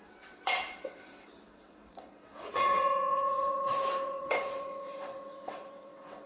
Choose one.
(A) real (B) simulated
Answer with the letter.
B